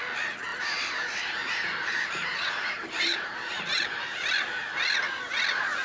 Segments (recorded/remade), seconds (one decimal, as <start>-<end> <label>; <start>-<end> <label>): 0.0-0.5 recorded; 0.5-4.0 remade; 4.0-5.8 recorded